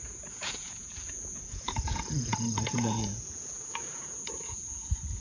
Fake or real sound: fake